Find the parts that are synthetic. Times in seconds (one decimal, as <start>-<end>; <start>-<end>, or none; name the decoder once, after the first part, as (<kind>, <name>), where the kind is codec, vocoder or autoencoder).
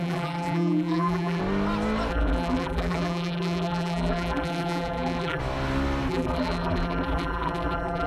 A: 0.0-1.4 (vocoder, BigVGAN v2); 2.1-5.4; 6.1-8.1